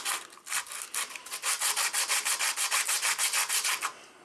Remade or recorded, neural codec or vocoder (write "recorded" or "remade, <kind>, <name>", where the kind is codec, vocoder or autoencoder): recorded